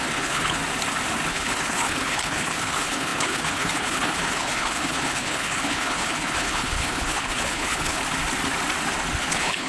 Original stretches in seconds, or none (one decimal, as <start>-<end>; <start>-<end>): 0.6-1.3; 8.0-9.2